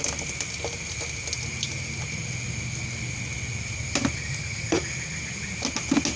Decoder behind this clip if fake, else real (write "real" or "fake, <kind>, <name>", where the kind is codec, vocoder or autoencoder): real